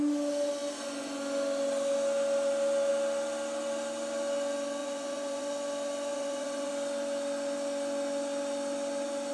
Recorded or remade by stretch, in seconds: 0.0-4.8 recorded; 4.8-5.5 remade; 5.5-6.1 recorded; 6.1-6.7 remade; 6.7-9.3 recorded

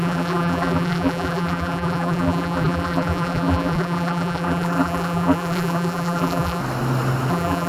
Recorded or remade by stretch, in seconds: 0.0-6.6 remade; 6.6-7.3 recorded; 7.3-7.7 remade

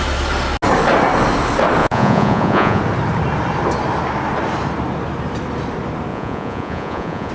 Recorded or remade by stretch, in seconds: 0.0-1.8 recorded; 1.8-2.8 remade; 2.8-6.1 recorded; 6.1-7.3 remade

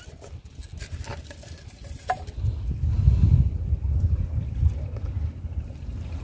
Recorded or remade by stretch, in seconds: 0.0-6.2 recorded

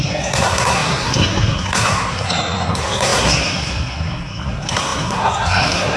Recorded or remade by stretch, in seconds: 0.0-6.0 remade